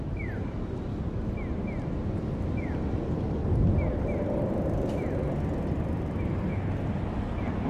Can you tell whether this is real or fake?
real